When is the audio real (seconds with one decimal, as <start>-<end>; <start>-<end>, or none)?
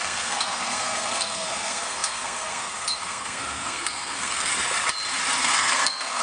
4.5-5.4